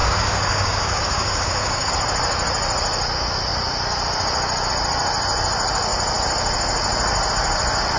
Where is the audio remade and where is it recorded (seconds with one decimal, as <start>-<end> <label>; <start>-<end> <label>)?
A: 0.0-1.9 remade; 1.9-8.0 recorded